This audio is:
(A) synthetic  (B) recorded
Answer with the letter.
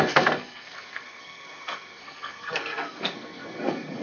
A